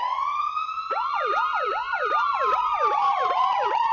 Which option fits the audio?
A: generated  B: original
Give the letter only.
A